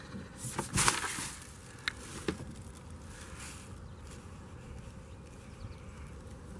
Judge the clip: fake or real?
real